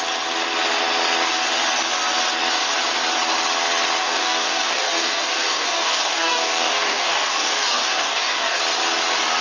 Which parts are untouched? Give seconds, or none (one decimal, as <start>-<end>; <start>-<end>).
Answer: 0.0-4.0; 8.6-9.4